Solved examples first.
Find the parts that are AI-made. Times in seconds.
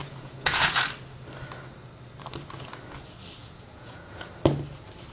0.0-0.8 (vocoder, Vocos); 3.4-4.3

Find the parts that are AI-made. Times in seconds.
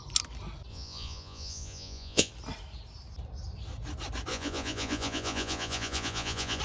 0.7-2.3 (vocoder, Vocos); 4.3-6.6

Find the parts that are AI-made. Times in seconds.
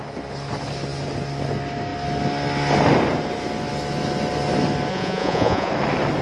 4.9-5.7 (vocoder, Vocos)